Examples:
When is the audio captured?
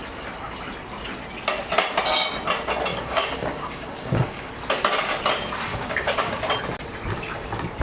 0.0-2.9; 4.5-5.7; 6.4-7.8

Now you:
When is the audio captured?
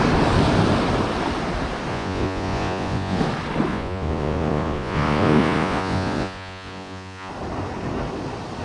0.0-1.9; 3.2-3.7; 7.3-8.6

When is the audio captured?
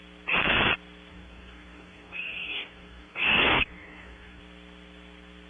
0.0-1.1; 4.4-5.5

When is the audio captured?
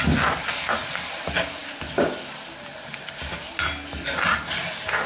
0.0-5.1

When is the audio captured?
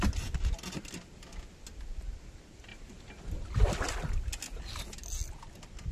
0.0-2.7; 3.6-5.9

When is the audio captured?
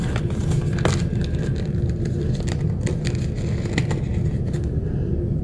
0.0-5.4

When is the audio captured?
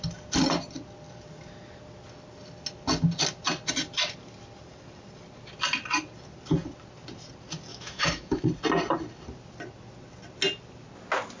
0.0-7.7; 8.4-11.4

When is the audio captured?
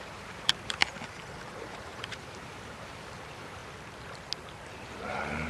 0.8-1.4; 3.6-4.7